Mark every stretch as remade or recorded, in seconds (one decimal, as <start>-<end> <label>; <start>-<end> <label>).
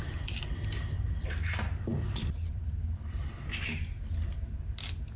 0.0-1.9 recorded; 1.9-3.2 remade; 3.2-5.2 recorded